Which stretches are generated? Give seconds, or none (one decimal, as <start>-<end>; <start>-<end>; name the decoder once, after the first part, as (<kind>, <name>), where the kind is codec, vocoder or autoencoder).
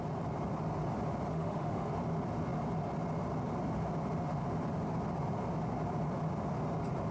1.3-1.9 (autoencoder, DAC-VAE)